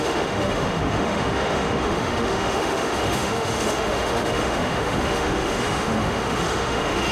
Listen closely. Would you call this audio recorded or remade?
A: remade